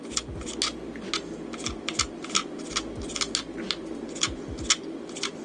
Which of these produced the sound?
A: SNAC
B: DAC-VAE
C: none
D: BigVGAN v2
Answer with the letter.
C